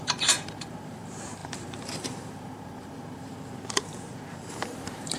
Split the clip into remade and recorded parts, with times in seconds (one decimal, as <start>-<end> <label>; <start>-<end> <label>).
0.0-5.2 remade